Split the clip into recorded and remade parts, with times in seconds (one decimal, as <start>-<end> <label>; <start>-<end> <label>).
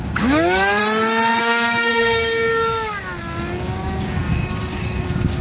0.0-0.8 remade; 0.8-1.4 recorded; 1.4-5.4 remade